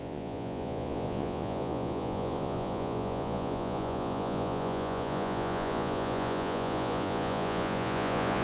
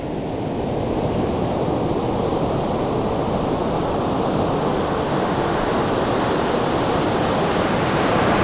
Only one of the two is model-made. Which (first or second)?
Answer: first